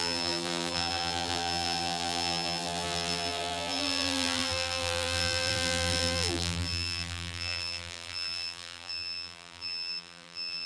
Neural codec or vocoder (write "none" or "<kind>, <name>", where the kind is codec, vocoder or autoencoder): vocoder, BigVGAN v2